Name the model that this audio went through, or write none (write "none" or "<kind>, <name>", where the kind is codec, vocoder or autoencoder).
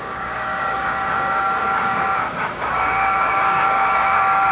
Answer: codec, DAC